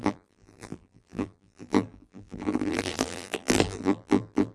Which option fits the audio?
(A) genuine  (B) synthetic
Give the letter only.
B